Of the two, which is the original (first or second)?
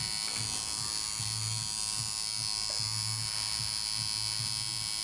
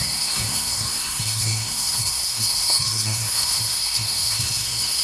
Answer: first